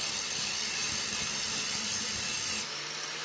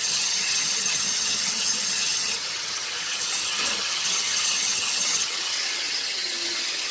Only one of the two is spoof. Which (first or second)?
second